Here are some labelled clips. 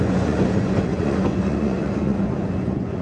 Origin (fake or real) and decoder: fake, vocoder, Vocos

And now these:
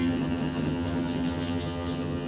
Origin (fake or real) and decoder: fake, vocoder, HiFi-GAN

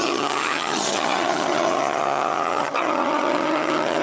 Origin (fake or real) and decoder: fake, vocoder, HiFi-GAN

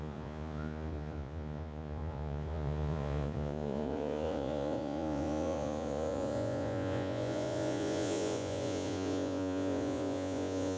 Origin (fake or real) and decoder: fake, vocoder, Vocos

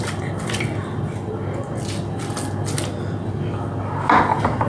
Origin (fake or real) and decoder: real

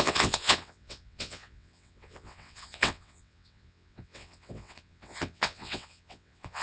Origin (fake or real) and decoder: fake, vocoder, WaveNeXt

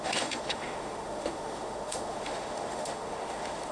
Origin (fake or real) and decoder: fake, autoencoder, DAC-VAE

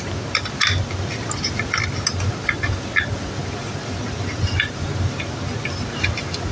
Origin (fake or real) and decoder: real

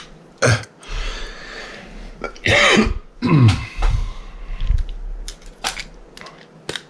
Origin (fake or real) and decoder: real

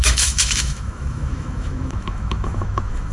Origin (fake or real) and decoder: fake, autoencoder, DAC-VAE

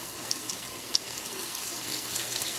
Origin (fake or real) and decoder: fake, codec, SNAC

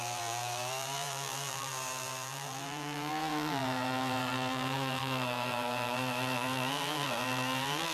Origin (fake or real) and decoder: fake, vocoder, BigVGAN v2